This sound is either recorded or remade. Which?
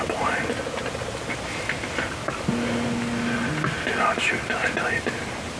recorded